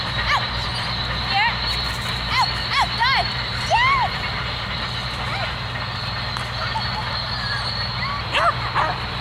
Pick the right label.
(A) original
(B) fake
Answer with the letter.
A